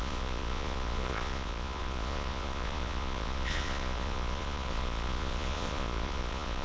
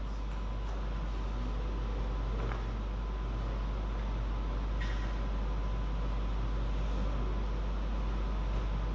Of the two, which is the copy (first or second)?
first